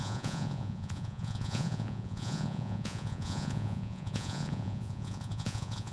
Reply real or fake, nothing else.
fake